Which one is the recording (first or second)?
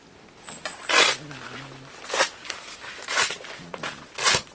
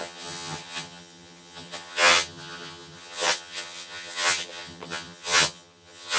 first